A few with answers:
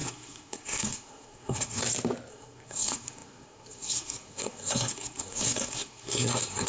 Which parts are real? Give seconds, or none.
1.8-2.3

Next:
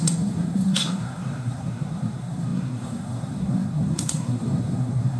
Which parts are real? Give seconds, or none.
none

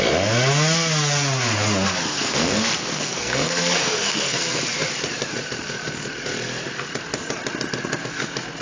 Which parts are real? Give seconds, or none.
0.0-2.1; 4.6-8.6